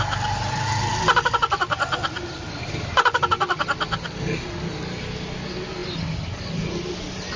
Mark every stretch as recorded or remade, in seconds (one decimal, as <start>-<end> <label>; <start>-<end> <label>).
0.0-7.4 recorded